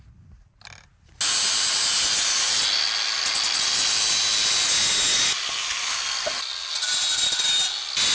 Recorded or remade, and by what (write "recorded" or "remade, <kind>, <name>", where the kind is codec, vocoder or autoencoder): recorded